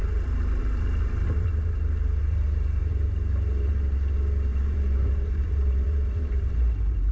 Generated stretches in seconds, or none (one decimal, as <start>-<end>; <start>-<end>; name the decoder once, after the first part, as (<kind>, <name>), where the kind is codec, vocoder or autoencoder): 0.0-0.6 (vocoder, BigVGAN v2); 1.5-2.2; 2.9-3.7; 4.5-7.1